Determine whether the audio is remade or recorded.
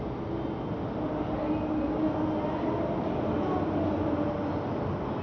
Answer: recorded